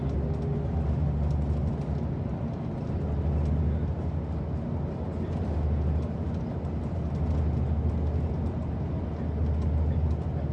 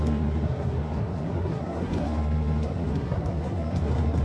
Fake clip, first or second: second